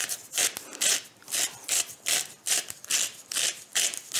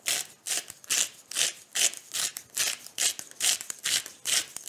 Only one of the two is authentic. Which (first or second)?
second